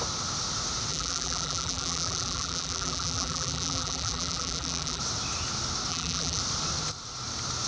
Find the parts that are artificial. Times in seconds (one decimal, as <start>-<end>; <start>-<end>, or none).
0.9-5.0; 5.9-6.4